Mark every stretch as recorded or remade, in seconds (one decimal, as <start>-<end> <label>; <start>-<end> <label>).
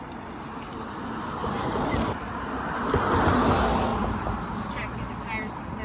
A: 0.0-1.4 recorded; 1.4-3.0 remade; 3.0-3.9 recorded; 3.9-5.1 remade; 5.1-5.8 recorded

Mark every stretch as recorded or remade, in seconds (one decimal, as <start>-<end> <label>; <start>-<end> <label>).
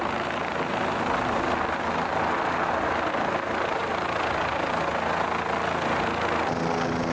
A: 0.0-7.1 recorded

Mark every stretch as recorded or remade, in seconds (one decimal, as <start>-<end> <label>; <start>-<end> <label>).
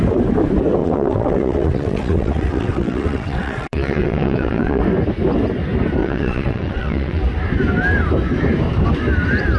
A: 0.0-0.8 recorded; 0.8-4.8 remade; 4.8-6.0 recorded; 6.0-7.2 remade; 7.2-9.6 recorded